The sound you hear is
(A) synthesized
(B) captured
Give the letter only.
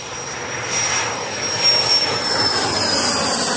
B